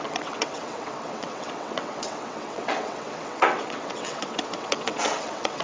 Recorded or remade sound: remade